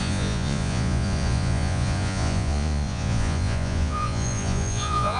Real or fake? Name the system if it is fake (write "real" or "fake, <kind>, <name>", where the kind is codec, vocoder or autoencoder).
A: fake, vocoder, Vocos